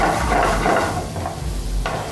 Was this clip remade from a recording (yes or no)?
no